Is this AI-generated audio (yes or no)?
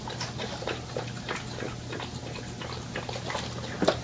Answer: no